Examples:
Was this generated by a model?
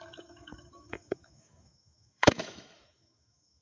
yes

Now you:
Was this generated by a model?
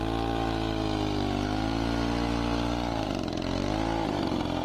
no